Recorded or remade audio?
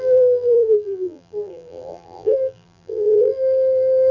remade